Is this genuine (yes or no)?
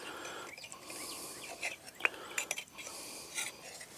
yes